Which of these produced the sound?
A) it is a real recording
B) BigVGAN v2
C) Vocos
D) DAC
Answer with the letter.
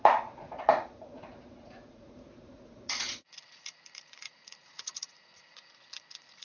C